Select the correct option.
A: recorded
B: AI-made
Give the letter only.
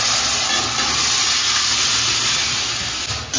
A